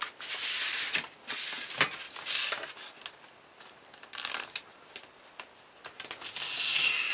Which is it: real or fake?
real